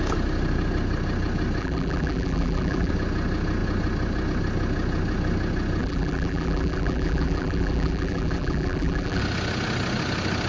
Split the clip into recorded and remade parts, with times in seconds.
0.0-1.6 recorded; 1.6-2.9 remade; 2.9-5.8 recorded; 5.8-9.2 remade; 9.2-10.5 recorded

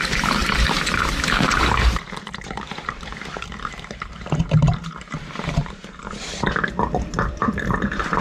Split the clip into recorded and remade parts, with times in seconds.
0.0-8.2 remade